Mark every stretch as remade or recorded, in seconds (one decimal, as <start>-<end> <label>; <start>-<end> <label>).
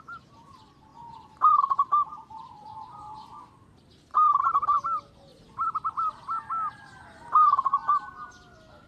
0.0-0.9 recorded; 0.9-1.5 remade; 1.5-5.3 recorded; 5.3-6.0 remade; 6.0-7.8 recorded; 7.8-8.3 remade; 8.3-8.9 recorded